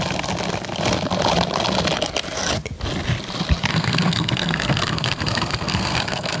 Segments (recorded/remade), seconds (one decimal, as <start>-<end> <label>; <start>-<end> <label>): 0.0-3.7 recorded; 3.7-6.4 remade